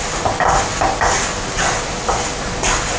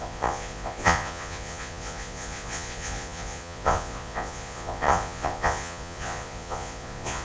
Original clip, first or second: first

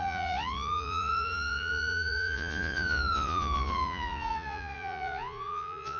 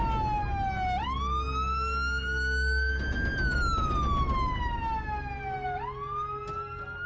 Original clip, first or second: second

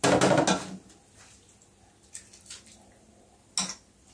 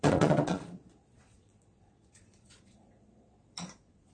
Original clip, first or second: first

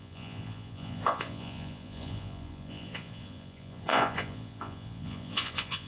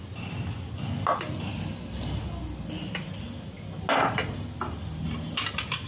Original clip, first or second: second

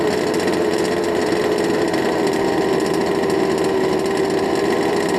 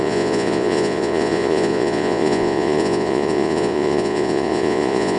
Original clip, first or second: first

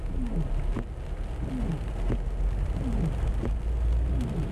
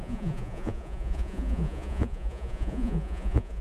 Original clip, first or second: first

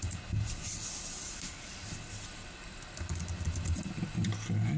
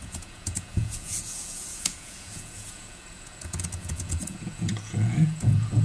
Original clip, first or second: first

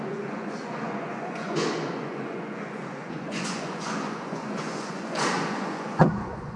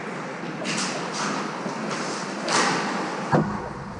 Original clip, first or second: second